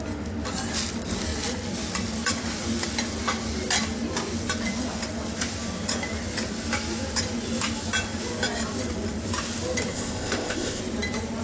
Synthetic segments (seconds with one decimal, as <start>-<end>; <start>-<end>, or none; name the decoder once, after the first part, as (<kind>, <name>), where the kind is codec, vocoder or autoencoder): 9.9-10.8 (codec, ZipCodec)